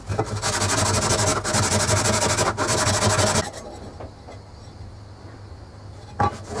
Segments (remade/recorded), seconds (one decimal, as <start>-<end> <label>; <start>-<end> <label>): 0.0-6.6 recorded